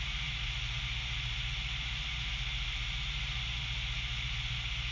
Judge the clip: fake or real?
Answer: real